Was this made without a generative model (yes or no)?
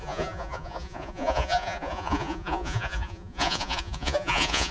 no